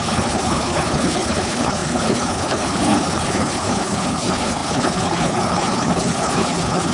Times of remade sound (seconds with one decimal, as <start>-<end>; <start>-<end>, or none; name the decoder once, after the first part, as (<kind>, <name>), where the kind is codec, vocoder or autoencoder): 0.0-6.9 (codec, HILCodec)